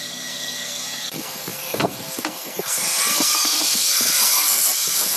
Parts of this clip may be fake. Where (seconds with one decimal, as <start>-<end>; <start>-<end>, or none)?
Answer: 0.0-5.2

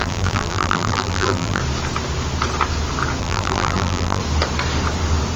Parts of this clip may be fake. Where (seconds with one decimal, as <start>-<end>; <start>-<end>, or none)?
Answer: 0.0-1.6; 3.2-4.2

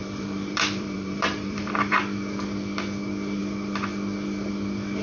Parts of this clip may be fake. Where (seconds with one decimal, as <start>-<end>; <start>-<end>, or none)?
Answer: 0.0-2.0

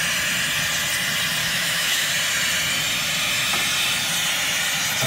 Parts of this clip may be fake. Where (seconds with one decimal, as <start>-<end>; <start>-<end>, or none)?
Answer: 1.4-2.1

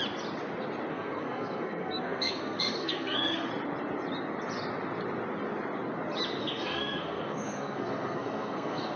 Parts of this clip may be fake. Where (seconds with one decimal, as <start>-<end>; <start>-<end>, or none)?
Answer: 0.9-3.5; 6.4-9.0